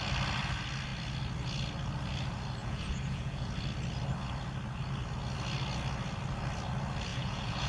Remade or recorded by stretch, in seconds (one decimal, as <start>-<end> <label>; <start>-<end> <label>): 0.0-2.6 recorded; 2.6-3.5 remade; 3.5-7.1 recorded; 7.1-7.7 remade